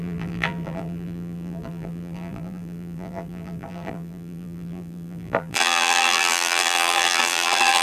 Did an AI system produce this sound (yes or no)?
yes